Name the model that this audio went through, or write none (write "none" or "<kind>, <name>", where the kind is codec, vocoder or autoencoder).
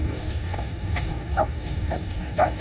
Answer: codec, DAC